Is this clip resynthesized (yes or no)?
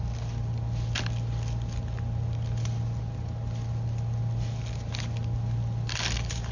no